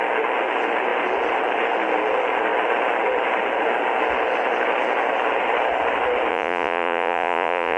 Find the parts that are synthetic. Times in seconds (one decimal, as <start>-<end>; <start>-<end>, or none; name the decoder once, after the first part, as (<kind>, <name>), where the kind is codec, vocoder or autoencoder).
6.3-7.8 (vocoder, Vocos)

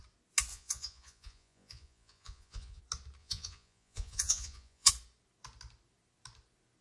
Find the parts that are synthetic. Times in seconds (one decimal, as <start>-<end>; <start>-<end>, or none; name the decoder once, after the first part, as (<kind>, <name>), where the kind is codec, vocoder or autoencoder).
0.5-2.8 (vocoder, Vocos); 3.2-4.9

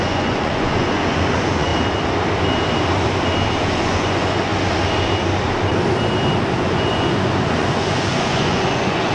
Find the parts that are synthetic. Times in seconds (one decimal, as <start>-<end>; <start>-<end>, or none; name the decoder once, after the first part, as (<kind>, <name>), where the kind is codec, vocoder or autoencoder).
0.0-1.7 (vocoder, Vocos); 3.6-4.5; 6.6-9.1

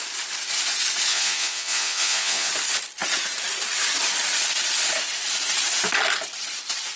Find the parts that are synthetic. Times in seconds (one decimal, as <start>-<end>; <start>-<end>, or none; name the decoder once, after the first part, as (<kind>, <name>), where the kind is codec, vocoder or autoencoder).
1.1-2.5 (vocoder, Vocos)

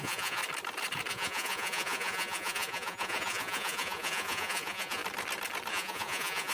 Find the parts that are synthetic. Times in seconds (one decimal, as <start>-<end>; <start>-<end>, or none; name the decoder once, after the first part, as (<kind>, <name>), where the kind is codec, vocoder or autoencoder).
0.0-0.4 (vocoder, Vocos); 1.1-5.0; 5.7-6.5

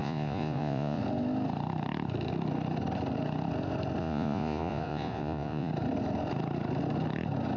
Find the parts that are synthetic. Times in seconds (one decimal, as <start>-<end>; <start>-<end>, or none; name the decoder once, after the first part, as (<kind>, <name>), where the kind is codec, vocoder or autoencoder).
0.0-1.0 (vocoder, Vocos); 4.0-5.7

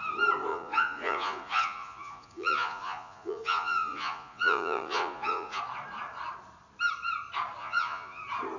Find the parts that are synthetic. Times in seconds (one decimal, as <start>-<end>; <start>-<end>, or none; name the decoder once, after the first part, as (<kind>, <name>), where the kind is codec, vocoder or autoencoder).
0.5-5.6 (vocoder, Vocos); 7.6-8.2